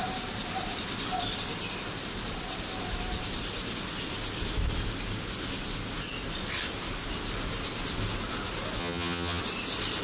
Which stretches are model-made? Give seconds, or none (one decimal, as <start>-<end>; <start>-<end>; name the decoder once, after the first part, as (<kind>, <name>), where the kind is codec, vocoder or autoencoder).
8.8-9.4 (vocoder, HiFi-GAN)